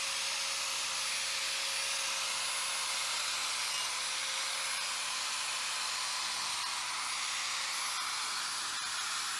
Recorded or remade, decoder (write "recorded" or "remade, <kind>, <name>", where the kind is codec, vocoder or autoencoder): recorded